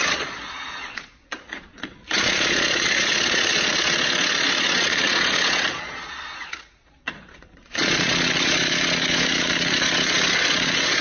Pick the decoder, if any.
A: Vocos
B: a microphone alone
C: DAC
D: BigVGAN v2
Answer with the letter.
A